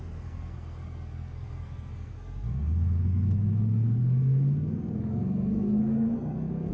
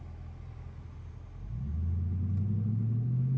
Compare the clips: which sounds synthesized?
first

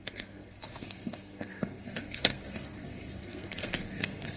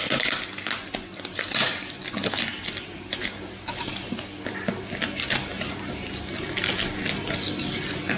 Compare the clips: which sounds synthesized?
first